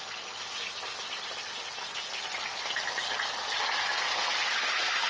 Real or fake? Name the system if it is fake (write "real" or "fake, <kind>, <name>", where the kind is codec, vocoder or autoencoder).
real